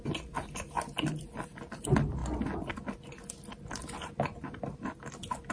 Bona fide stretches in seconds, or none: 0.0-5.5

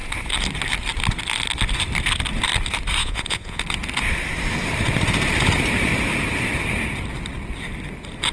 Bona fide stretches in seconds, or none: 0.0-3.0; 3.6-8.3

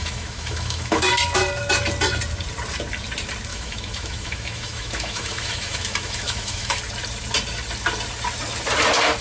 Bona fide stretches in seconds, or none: 1.1-3.5; 6.8-9.2

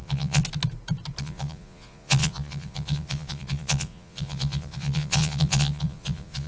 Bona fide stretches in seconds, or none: 0.4-1.2

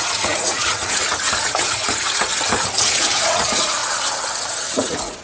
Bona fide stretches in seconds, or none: 2.3-2.8; 3.8-4.7

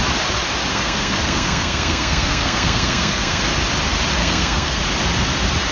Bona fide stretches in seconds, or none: 0.0-0.7; 3.4-4.2; 4.8-5.7